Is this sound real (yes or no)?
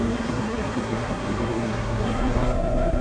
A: no